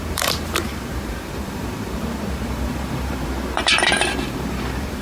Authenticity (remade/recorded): remade